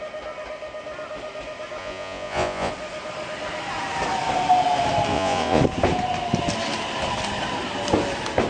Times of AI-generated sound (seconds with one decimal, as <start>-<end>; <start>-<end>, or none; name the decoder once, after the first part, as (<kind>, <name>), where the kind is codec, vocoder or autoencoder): 1.8-2.7 (vocoder, Vocos); 5.1-5.6